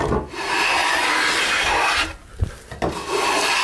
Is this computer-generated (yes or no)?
no